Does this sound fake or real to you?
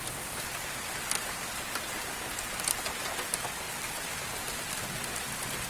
real